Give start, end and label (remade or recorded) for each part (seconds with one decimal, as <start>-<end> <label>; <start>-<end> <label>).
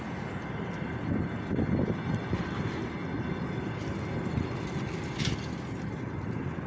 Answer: 0.0-6.7 recorded